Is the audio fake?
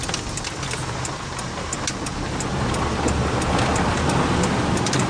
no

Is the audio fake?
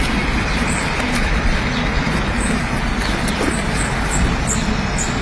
no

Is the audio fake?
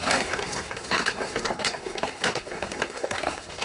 yes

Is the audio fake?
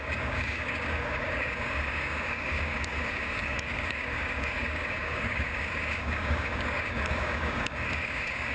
yes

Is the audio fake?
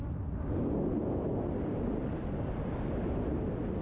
no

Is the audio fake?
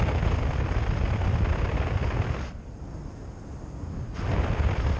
no